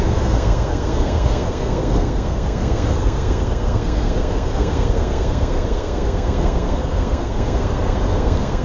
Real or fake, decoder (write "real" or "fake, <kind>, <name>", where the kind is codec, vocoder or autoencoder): fake, codec, SNAC